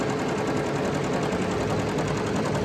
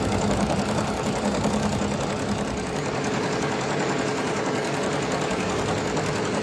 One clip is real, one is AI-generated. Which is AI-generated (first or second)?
second